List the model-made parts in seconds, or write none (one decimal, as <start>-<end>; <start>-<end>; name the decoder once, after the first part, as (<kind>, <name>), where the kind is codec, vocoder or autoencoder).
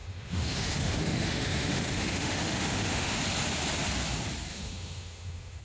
0.0-3.1 (autoencoder, DAC-VAE); 4.5-5.6